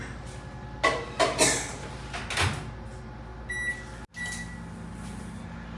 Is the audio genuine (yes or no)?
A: yes